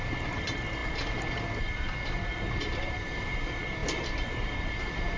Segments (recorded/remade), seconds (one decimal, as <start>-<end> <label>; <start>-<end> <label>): 0.0-5.2 remade